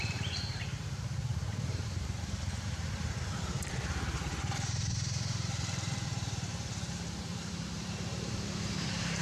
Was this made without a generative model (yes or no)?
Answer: no